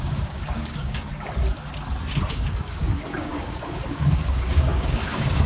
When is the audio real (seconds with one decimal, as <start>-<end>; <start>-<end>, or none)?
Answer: 1.1-2.3